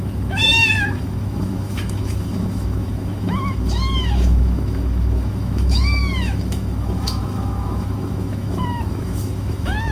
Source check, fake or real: fake